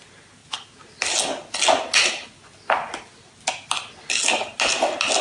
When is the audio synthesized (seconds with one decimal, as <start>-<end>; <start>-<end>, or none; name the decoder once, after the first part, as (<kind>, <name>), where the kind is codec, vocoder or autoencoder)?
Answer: none